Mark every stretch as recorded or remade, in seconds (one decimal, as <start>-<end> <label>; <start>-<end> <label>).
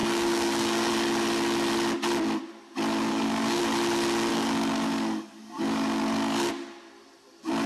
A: 0.0-0.9 remade; 0.9-3.1 recorded; 3.1-3.6 remade; 3.6-4.3 recorded; 4.3-6.5 remade; 6.5-7.7 recorded